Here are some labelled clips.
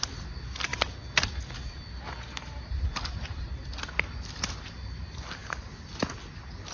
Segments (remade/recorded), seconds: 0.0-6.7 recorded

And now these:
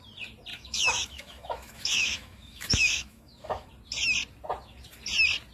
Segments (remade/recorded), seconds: 0.0-0.5 recorded; 0.5-3.7 remade; 3.7-5.5 recorded